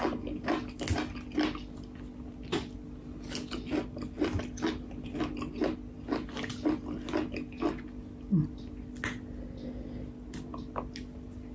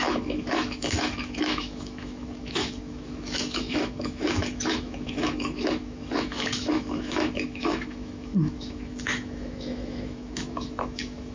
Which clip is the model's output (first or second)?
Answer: second